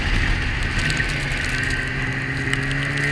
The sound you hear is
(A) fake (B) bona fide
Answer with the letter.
B